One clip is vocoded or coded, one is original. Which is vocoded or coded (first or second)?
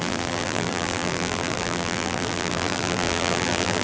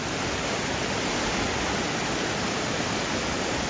first